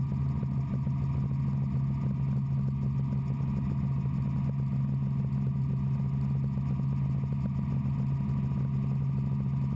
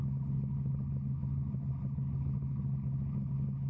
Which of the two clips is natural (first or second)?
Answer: first